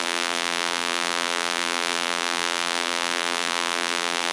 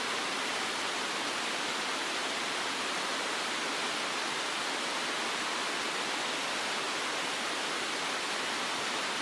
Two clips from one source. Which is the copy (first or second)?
first